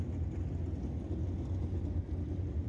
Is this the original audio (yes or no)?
yes